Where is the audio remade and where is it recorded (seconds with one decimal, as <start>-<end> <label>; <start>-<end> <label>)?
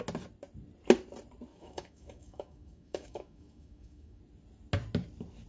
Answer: 0.0-1.5 recorded; 1.5-4.2 remade; 4.2-5.5 recorded